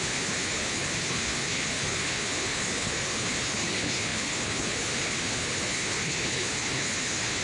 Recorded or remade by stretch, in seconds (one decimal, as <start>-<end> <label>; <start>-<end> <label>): 0.0-7.4 remade